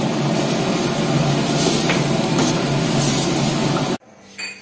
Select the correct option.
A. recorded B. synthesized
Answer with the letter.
A